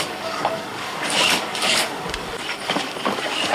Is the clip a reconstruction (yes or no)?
yes